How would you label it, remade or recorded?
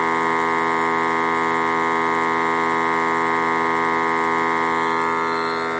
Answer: recorded